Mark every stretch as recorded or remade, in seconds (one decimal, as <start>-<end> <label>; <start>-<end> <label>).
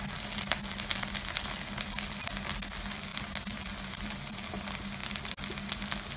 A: 0.0-6.2 recorded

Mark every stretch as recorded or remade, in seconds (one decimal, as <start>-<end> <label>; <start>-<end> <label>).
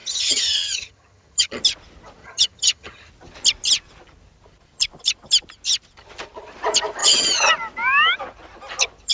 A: 0.0-1.6 remade; 1.6-2.2 recorded; 2.2-3.1 remade; 3.1-7.0 recorded; 7.0-7.5 remade; 7.5-9.1 recorded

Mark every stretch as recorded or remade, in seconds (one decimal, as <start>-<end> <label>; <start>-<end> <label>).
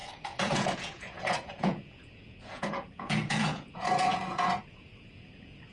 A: 0.0-5.7 remade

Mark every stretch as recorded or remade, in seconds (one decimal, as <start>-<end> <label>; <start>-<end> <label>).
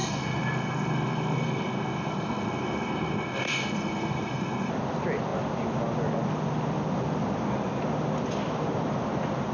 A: 0.0-4.7 remade; 4.7-9.5 recorded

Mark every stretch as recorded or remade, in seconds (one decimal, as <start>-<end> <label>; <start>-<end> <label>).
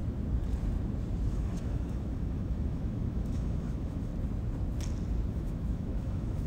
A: 0.0-1.3 recorded; 1.3-4.1 remade; 4.1-5.3 recorded; 5.3-6.5 remade